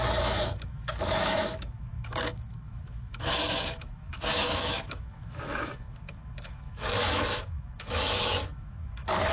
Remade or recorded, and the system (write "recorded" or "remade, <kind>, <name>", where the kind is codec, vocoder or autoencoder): remade, autoencoder, DAC-VAE